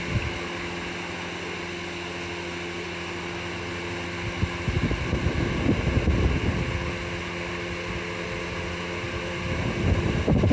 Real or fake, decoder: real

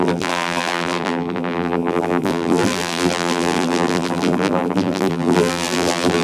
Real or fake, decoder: fake, vocoder, BigVGAN v2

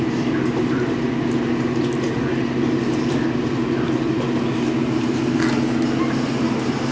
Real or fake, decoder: real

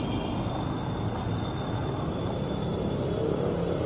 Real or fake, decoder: real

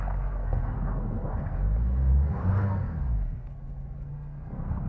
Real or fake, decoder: fake, codec, SNAC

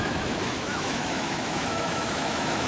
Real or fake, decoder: fake, autoencoder, DAC-VAE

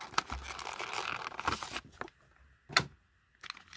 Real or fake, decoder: real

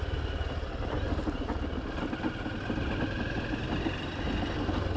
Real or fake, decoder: real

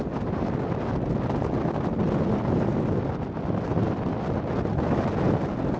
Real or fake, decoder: real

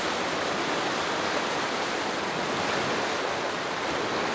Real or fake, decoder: real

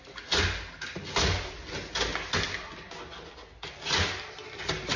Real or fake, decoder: real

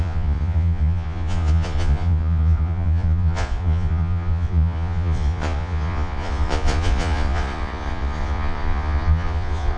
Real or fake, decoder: fake, vocoder, Vocos